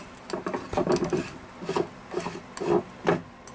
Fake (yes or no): no